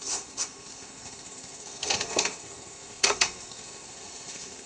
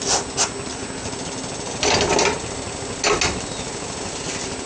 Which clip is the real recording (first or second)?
second